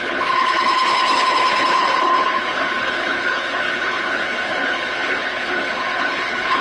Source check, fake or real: fake